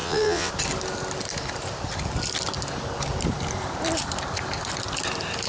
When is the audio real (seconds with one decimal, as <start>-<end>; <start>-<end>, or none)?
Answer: 0.5-5.5